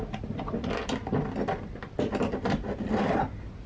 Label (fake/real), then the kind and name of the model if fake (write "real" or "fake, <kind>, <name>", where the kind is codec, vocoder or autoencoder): real